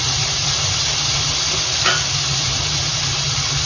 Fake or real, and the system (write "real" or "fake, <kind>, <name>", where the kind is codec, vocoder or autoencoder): real